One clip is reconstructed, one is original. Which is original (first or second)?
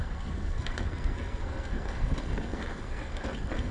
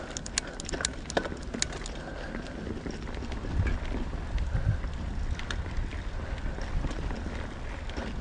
second